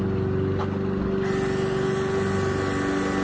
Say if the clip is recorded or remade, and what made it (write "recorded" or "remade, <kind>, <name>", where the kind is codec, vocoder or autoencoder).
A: recorded